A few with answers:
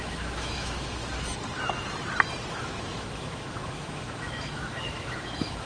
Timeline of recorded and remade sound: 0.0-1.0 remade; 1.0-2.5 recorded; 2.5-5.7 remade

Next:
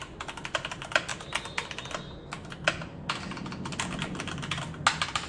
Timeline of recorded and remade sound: 0.0-5.3 recorded

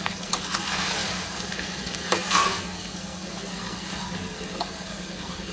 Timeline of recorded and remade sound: 0.0-5.5 remade

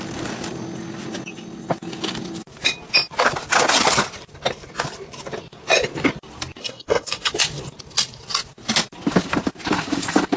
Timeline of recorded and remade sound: 0.0-6.6 recorded; 6.6-7.3 remade; 7.3-10.4 recorded

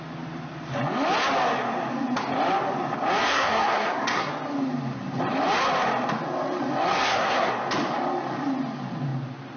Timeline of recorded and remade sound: 0.0-3.2 recorded; 3.2-4.3 remade; 4.3-6.9 recorded; 6.9-7.5 remade; 7.5-9.6 recorded

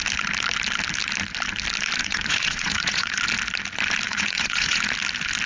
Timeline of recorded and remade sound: 0.0-2.0 recorded; 2.0-3.2 remade; 3.2-4.1 recorded; 4.1-4.8 remade; 4.8-5.5 recorded